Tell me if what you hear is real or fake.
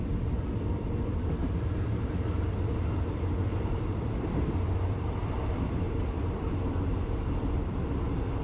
fake